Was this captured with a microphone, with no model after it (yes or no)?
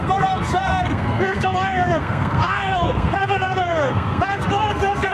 no